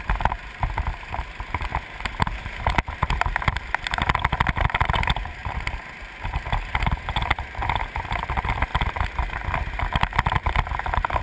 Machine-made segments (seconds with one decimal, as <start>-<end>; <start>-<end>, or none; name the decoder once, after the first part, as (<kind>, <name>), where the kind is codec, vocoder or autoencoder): 0.0-1.7 (vocoder, BigVGAN v2); 2.4-5.4; 8.2-11.2